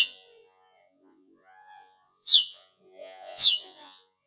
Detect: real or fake fake